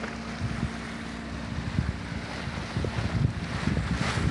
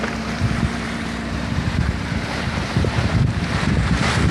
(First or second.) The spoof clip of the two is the second